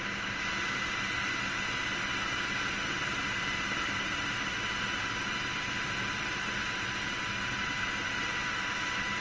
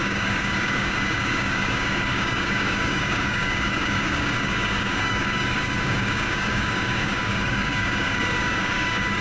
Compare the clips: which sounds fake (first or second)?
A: second